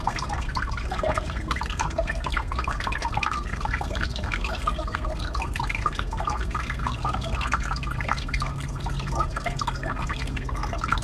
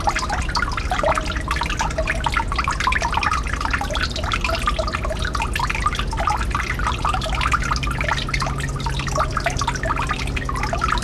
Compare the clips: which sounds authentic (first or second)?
second